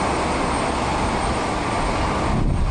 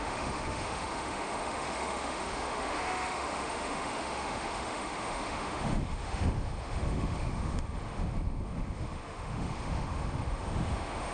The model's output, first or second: second